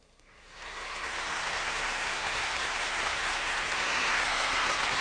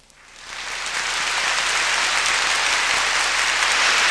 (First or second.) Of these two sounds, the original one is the second